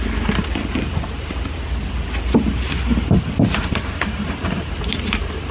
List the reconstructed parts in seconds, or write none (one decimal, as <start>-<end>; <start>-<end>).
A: 0.0-0.4; 3.6-5.5